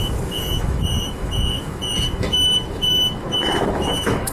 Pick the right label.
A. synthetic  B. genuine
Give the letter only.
A